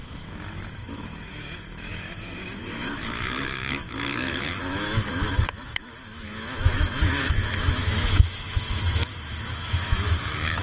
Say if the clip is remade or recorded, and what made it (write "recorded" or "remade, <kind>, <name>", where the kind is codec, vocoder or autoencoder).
remade, autoencoder, DAC-VAE